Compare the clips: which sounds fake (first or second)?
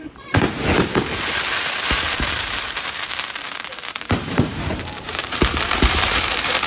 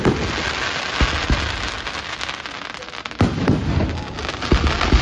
first